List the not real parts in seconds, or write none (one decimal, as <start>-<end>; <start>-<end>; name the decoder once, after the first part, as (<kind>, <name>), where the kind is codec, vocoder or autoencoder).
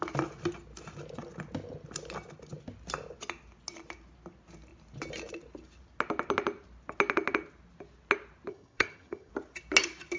8.5-9.3 (vocoder, HiFi-GAN)